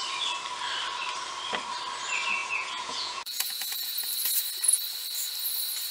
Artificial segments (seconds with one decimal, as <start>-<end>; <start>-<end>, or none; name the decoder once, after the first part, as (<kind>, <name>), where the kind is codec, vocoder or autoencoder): 2.4-4.1 (vocoder, Vocos)